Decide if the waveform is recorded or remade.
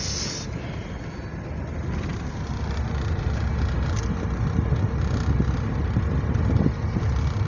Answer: recorded